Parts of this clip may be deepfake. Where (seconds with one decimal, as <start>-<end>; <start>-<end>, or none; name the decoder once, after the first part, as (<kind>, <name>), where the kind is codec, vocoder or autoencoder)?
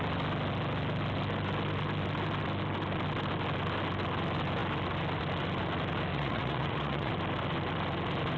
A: 6.1-7.1 (vocoder, Vocos)